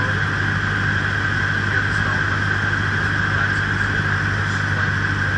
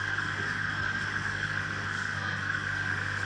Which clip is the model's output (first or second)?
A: second